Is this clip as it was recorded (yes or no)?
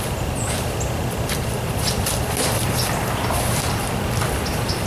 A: yes